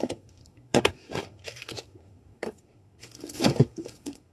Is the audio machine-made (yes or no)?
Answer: yes